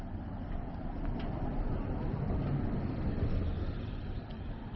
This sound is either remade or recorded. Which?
recorded